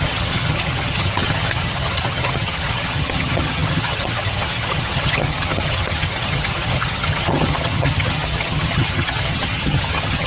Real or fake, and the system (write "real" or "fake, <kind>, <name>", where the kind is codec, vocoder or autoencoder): fake, vocoder, HiFi-GAN